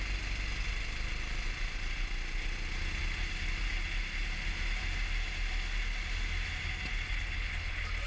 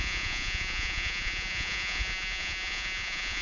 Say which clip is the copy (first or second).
second